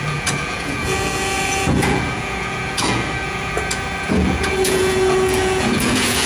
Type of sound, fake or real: fake